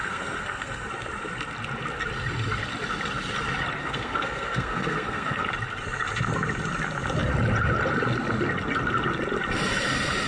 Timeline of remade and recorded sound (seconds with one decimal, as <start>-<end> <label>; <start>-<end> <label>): 0.0-0.9 remade; 0.9-3.8 recorded; 3.8-5.5 remade; 5.5-10.3 recorded